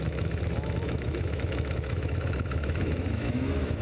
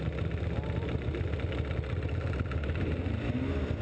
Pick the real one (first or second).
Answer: second